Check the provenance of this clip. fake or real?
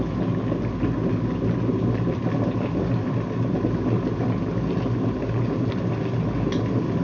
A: real